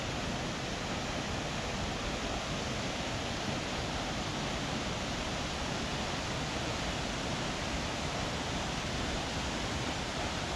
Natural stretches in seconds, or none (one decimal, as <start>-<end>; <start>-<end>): 0.0-10.6